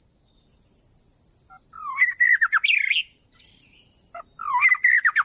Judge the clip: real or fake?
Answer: real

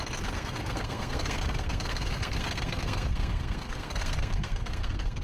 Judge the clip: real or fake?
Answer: fake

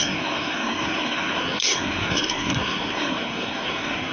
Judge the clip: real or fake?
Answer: fake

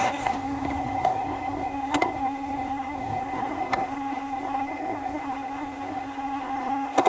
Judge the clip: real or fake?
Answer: fake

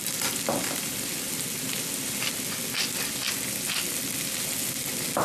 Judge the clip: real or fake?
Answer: real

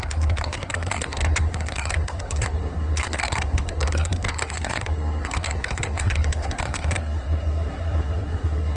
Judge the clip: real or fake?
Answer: fake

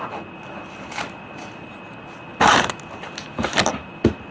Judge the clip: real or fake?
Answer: real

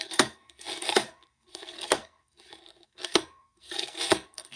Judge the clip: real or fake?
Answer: fake